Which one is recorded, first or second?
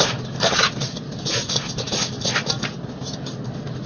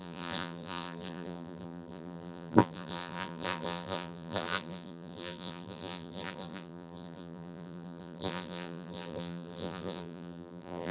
first